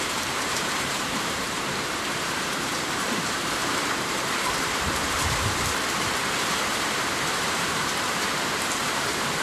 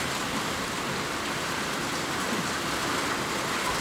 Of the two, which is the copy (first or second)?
first